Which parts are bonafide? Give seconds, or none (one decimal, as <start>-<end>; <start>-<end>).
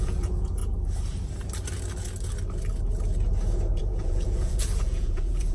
0.6-3.7